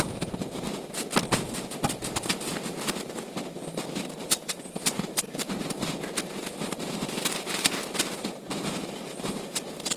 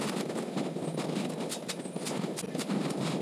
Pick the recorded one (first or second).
second